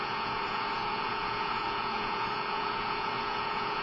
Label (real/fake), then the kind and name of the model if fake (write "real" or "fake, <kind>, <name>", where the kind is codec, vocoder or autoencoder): fake, vocoder, Vocos